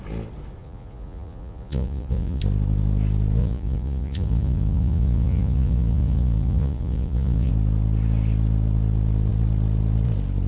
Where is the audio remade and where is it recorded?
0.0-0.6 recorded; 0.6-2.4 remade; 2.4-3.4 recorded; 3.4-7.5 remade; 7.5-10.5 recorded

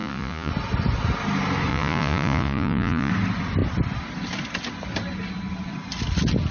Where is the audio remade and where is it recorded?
0.0-0.5 remade; 0.5-1.7 recorded; 1.7-3.1 remade; 3.1-6.5 recorded

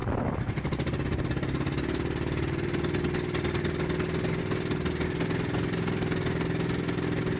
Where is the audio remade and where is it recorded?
0.0-7.4 recorded

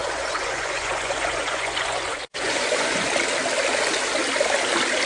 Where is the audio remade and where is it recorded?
0.0-3.1 remade; 3.1-5.1 recorded

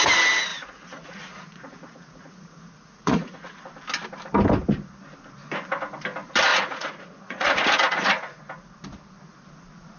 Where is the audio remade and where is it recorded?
0.0-0.5 recorded; 0.5-3.6 remade; 3.6-6.5 recorded; 6.5-8.4 remade; 8.4-10.0 recorded

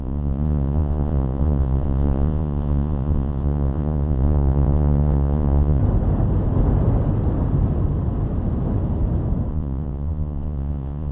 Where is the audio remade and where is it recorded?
0.0-5.8 remade; 5.8-9.5 recorded; 9.5-11.1 remade

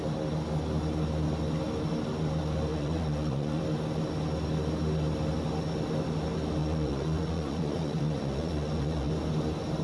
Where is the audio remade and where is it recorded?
0.0-2.7 recorded; 2.7-3.6 remade; 3.6-6.6 recorded; 6.6-9.1 remade; 9.1-9.8 recorded